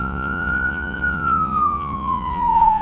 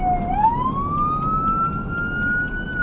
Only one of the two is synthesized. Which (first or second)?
first